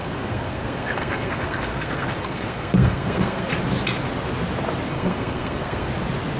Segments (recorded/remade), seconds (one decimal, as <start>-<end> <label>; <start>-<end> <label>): 0.0-3.5 remade; 3.5-4.9 recorded; 4.9-5.9 remade; 5.9-6.4 recorded